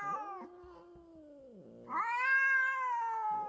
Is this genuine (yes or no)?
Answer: yes